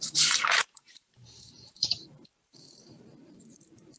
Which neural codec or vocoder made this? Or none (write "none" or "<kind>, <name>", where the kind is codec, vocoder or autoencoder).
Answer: vocoder, BigVGAN v2